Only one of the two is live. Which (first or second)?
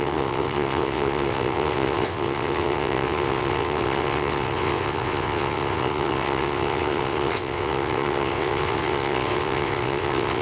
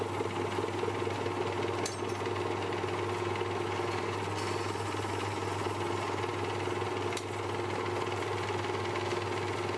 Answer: second